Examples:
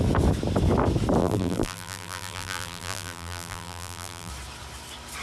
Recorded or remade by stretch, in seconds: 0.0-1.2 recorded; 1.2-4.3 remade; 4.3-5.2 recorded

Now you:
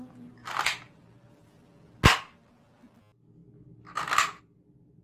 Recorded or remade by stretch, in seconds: 0.0-0.4 recorded; 0.4-1.0 remade; 1.0-5.0 recorded

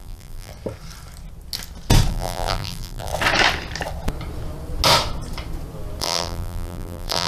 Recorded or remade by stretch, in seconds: 0.0-0.5 remade; 0.5-2.1 recorded; 2.1-3.1 remade; 3.1-6.0 recorded; 6.0-7.3 remade

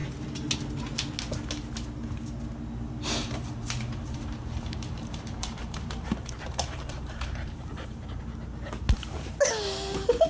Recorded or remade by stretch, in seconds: 0.0-3.2 recorded; 3.2-8.2 remade; 8.2-10.3 recorded

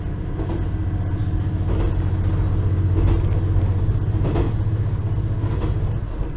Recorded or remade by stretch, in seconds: 0.0-6.4 recorded